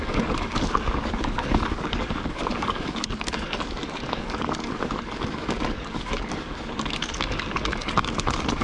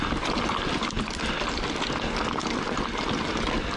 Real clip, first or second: second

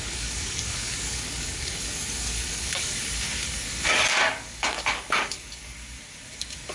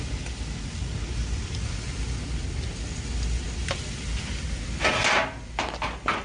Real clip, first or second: second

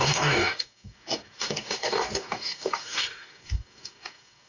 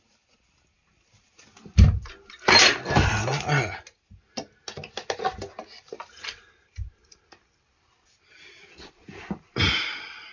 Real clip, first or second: second